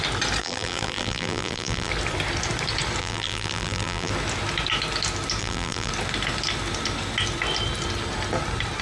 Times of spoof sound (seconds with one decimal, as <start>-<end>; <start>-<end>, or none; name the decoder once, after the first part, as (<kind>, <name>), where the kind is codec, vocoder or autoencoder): 0.4-1.9 (vocoder, BigVGAN v2); 3.0-4.1; 5.4-5.9